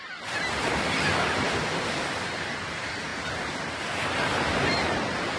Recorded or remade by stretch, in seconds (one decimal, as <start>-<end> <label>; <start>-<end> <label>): 0.0-3.1 remade; 3.1-3.7 recorded; 3.7-5.4 remade